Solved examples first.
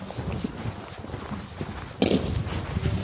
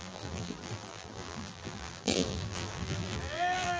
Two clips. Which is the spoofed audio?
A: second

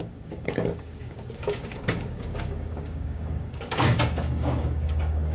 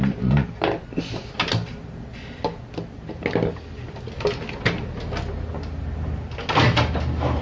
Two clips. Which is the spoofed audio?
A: first